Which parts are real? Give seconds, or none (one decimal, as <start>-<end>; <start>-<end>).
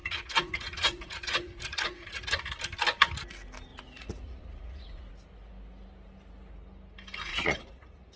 2.3-3.7; 5.1-7.3